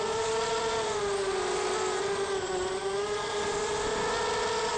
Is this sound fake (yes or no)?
no